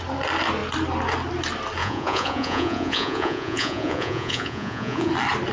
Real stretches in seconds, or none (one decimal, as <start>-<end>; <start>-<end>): 0.0-1.8; 5.1-5.5